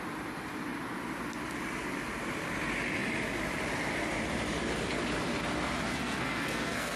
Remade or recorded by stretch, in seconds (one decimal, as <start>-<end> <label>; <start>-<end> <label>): 0.0-5.9 recorded; 5.9-7.0 remade

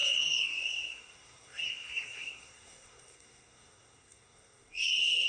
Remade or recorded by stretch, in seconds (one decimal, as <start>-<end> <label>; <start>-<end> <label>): 0.0-5.3 remade

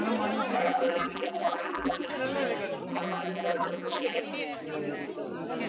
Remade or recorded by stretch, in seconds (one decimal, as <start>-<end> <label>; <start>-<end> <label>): 0.0-0.6 recorded; 0.6-2.1 remade; 2.1-2.9 recorded; 2.9-4.2 remade; 4.2-5.7 recorded

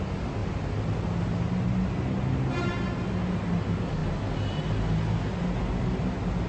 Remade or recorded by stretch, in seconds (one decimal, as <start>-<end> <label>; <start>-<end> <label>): 0.0-6.5 recorded